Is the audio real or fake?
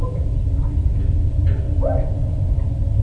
real